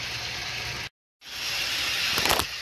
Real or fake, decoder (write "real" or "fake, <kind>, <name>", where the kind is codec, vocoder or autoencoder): real